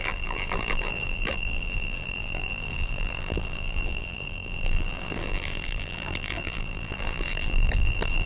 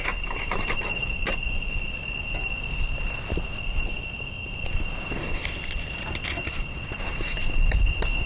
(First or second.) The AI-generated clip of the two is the first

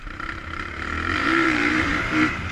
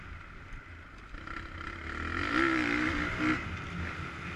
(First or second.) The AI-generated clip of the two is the first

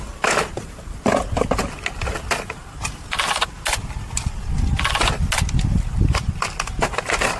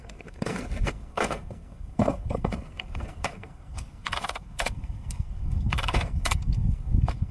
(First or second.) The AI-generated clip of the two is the second